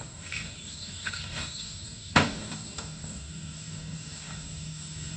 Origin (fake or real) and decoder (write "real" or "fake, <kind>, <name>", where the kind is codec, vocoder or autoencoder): fake, codec, DAC